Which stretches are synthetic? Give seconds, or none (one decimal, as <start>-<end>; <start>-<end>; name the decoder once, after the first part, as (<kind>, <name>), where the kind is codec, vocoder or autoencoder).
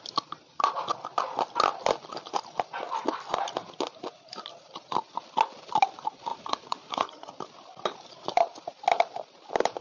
6.3-7.3 (vocoder, Vocos)